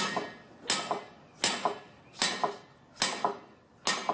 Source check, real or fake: real